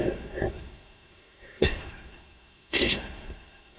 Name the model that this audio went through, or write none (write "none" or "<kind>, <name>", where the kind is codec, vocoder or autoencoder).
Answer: codec, SNAC